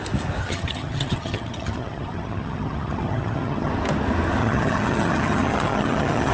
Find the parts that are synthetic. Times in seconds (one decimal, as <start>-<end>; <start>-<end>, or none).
0.4-3.7; 4.4-6.3